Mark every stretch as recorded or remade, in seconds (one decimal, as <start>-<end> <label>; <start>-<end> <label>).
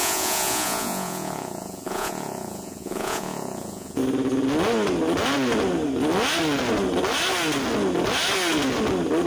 0.0-4.0 remade; 4.0-9.3 recorded